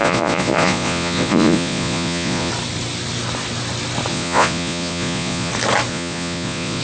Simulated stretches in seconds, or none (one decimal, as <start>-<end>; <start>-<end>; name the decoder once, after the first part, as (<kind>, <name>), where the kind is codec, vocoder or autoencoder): 0.0-2.5 (vocoder, Vocos); 4.1-5.5; 5.9-6.8